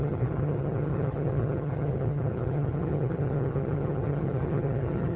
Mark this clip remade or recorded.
remade